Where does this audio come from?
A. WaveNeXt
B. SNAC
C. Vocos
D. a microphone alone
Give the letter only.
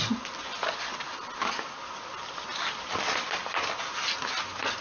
D